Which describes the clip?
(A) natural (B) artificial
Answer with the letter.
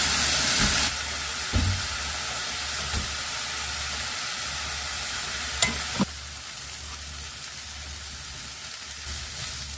A